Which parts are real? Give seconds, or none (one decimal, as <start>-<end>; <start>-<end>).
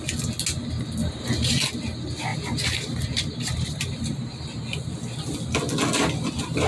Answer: 0.0-2.3; 4.6-6.7